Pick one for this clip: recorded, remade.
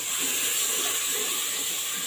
recorded